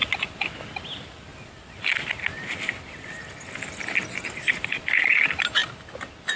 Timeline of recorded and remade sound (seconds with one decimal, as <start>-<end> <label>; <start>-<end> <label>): 0.0-6.4 recorded